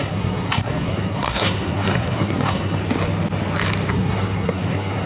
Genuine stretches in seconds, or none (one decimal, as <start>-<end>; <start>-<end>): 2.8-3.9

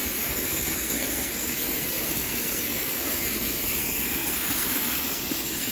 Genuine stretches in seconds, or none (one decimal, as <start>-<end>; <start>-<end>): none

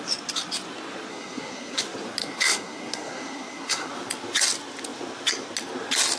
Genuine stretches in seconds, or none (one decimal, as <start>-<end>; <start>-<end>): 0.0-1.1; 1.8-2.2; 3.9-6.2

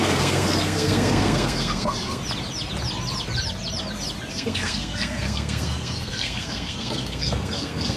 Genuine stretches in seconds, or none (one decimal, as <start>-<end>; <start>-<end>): 2.2-4.3